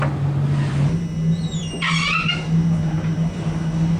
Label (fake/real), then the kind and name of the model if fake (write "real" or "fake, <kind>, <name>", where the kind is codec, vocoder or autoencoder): real